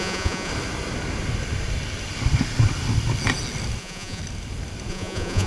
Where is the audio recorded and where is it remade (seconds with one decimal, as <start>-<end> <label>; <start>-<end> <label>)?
0.0-0.5 remade; 0.5-3.8 recorded; 3.8-4.2 remade; 4.2-4.9 recorded; 4.9-5.5 remade